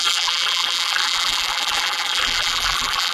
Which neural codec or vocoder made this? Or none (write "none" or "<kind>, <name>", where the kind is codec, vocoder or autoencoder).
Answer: vocoder, BigVGAN v2